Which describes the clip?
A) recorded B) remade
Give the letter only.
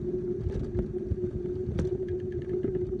A